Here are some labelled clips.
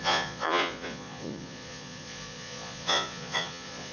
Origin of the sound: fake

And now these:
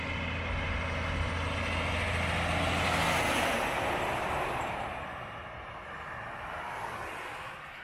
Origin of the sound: real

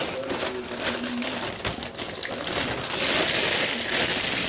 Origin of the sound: real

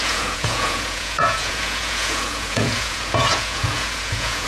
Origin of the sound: fake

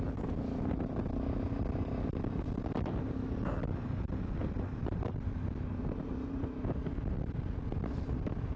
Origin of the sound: real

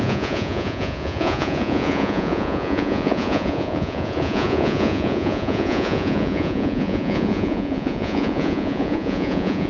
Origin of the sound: fake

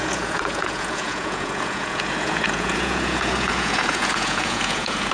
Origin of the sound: fake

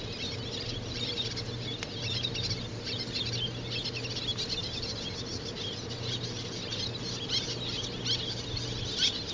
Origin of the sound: real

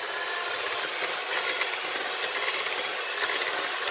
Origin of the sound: real